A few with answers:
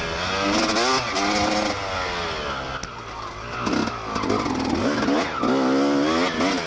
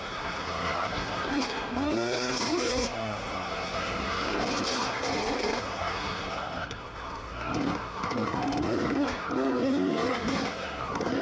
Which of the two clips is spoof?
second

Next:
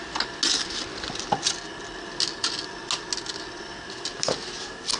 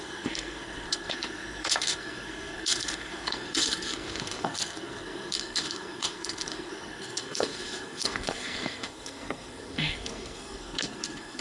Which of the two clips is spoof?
second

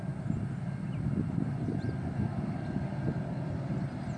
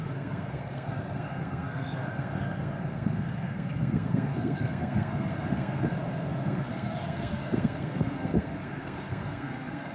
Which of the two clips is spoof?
second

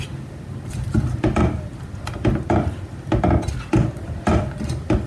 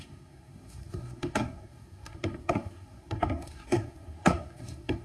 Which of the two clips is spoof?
second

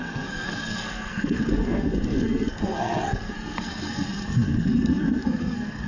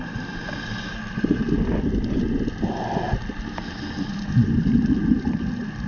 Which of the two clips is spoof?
first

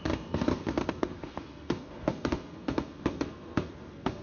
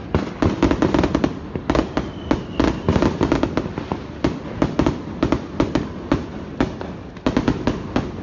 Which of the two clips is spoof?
first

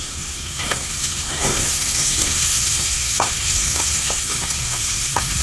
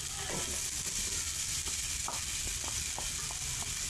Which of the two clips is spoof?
first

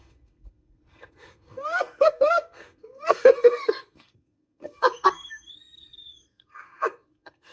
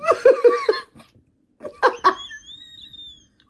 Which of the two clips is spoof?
first